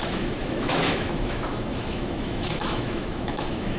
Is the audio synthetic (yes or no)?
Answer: yes